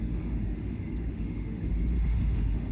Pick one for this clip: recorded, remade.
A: remade